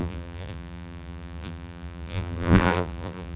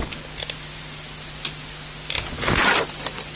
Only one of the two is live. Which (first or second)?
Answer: second